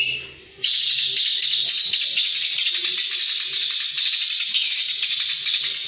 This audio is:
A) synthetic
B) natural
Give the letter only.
B